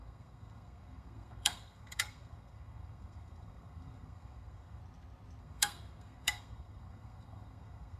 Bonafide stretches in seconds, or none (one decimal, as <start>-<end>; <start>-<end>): 4.8-5.4

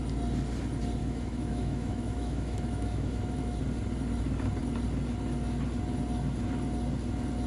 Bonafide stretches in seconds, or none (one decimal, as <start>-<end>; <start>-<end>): 0.0-1.0; 3.6-7.5

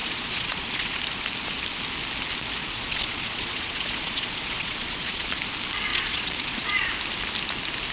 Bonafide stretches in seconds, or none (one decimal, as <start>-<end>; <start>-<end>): 1.0-2.6; 5.4-5.9; 6.9-7.9

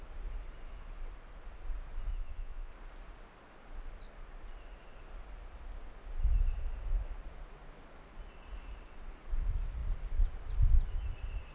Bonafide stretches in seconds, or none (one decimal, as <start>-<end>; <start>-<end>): 0.0-2.1; 2.7-11.5

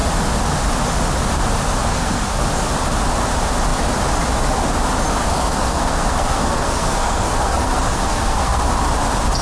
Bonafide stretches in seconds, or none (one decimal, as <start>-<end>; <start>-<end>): 0.0-1.9; 2.4-5.2; 8.6-9.4

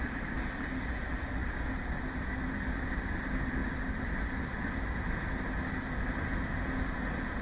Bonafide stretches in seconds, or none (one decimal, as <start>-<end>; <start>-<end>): 0.0-7.4